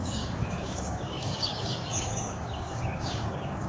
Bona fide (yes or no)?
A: no